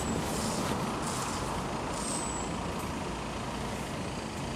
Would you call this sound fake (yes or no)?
no